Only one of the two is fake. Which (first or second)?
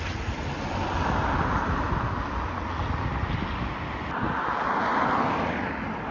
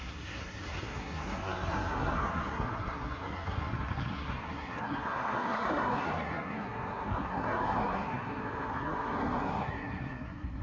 second